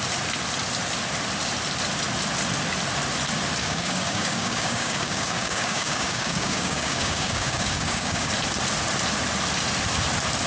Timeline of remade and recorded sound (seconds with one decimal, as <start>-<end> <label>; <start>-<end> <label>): 0.0-3.6 recorded; 3.6-8.3 remade; 8.3-10.5 recorded